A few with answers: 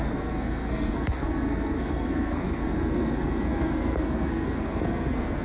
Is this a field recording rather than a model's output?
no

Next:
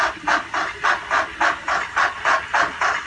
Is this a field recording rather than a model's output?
no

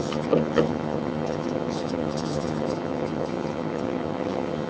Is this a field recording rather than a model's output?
no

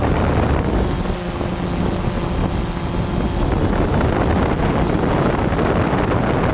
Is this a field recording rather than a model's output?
yes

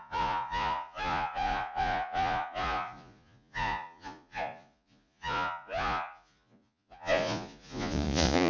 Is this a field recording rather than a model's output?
no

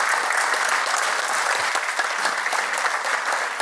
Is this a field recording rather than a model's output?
yes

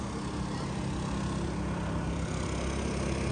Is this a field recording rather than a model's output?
yes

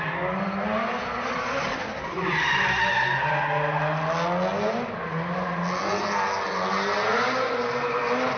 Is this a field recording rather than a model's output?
yes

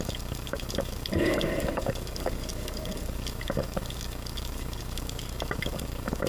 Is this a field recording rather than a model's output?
no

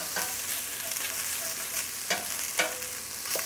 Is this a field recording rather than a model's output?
yes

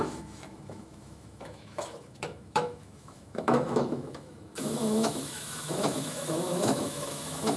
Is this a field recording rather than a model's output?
no